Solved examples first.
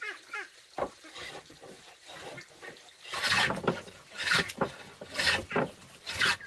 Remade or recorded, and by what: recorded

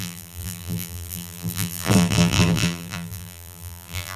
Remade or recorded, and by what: remade, vocoder, BigVGAN v2